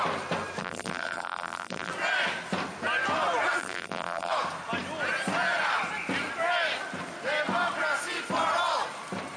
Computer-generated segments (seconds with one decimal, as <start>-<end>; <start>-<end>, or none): 0.6-1.9; 3.6-4.3